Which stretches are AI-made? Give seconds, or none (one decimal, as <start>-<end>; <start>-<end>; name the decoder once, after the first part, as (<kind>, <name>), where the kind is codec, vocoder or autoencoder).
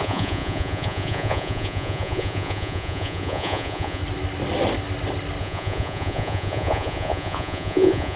0.0-4.0 (vocoder, Vocos); 5.4-8.2